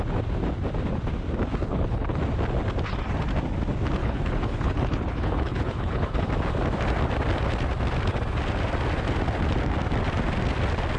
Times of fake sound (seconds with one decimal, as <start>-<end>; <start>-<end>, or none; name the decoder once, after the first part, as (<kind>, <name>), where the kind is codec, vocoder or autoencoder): 1.7-2.2 (codec, HILCodec); 4.0-6.3